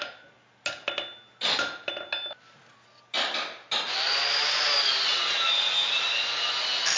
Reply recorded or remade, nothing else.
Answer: recorded